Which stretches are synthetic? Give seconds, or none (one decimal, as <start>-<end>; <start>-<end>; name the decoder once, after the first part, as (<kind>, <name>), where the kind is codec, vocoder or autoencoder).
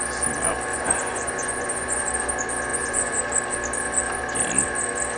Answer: 0.7-2.0 (vocoder, Vocos); 2.7-3.2